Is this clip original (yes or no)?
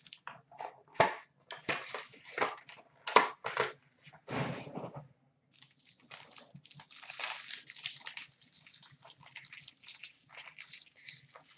yes